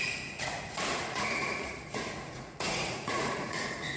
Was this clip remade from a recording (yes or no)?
yes